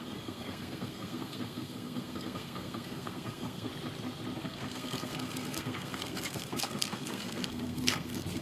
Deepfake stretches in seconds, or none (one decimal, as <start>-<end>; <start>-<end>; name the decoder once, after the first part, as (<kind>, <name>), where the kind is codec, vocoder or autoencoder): 0.0-3.7 (codec, SNAC); 4.4-8.4